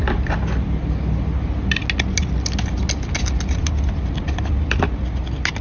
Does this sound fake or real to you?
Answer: real